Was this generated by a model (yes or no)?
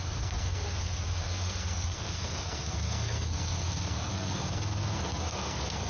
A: yes